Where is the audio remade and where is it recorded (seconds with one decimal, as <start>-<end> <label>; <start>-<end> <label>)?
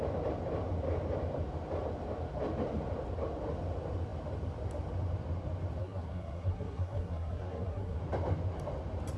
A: 0.0-5.8 recorded; 5.8-8.0 remade; 8.0-9.2 recorded